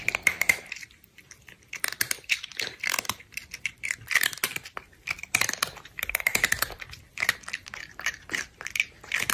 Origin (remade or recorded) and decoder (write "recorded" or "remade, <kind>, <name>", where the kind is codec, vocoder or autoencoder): remade, vocoder, BigVGAN v2